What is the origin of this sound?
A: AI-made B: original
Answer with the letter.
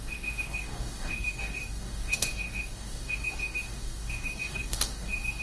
A